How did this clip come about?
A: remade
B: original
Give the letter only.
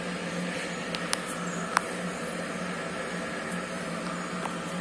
B